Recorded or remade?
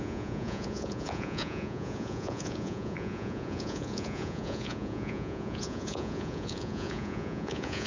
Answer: remade